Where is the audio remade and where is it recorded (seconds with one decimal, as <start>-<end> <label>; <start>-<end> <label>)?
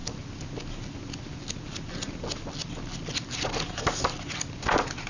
0.0-5.1 recorded